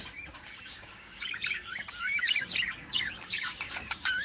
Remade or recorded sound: remade